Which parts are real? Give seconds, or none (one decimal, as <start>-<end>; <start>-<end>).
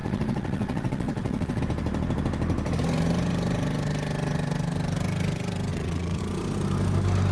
1.6-5.7; 6.2-7.3